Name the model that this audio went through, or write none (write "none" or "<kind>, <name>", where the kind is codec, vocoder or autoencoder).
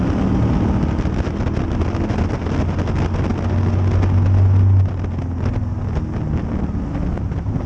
none